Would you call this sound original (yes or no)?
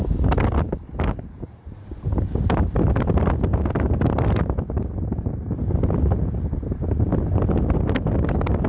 yes